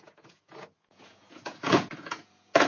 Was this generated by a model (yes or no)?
yes